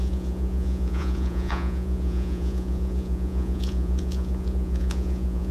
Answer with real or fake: fake